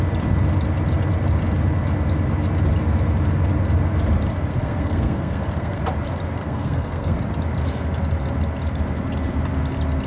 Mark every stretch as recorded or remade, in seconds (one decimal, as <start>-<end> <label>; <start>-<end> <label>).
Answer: 0.0-4.5 recorded; 4.5-5.8 remade; 5.8-6.4 recorded; 6.4-7.2 remade; 7.2-10.1 recorded

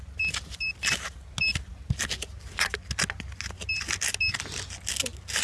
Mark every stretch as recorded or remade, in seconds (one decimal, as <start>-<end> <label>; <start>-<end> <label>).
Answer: 0.0-5.4 recorded

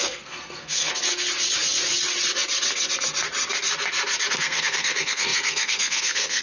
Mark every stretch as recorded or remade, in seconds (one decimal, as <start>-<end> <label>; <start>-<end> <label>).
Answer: 0.0-0.9 remade; 0.9-4.3 recorded; 4.3-6.4 remade

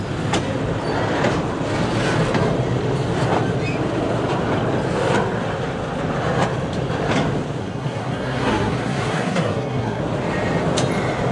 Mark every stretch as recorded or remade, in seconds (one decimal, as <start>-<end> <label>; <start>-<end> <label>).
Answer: 0.0-7.6 recorded; 7.6-10.0 remade; 10.0-11.3 recorded

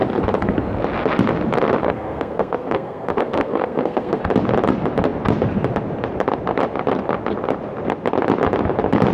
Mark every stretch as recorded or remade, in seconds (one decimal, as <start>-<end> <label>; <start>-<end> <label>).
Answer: 0.0-1.8 recorded; 1.8-4.2 remade; 4.2-9.1 recorded

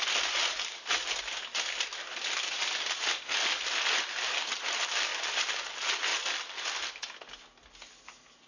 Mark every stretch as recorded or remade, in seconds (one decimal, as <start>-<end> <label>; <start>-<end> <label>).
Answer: 0.0-8.5 recorded